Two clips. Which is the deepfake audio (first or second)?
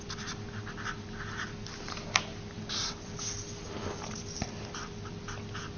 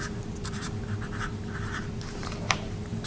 second